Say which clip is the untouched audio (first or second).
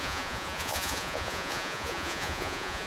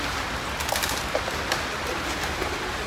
second